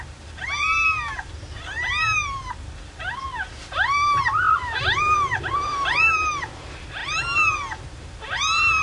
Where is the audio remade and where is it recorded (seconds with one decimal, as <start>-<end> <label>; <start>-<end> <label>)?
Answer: 0.0-8.8 recorded